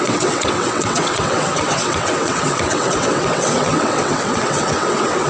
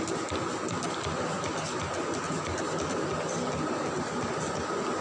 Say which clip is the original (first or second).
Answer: second